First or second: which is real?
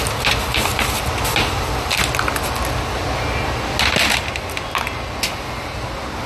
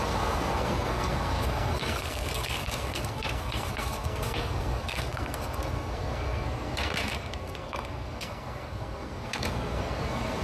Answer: first